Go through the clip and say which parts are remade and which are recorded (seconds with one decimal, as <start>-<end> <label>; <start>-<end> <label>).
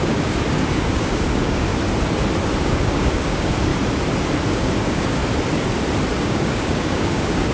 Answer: 0.0-1.7 remade; 1.7-2.6 recorded; 2.6-3.7 remade; 3.7-4.5 recorded; 4.5-5.2 remade; 5.2-6.2 recorded; 6.2-7.5 remade